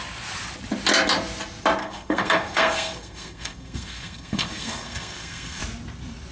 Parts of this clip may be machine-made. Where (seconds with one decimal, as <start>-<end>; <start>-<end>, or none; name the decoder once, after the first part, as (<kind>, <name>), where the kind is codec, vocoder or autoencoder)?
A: 1.8-5.6 (codec, SNAC)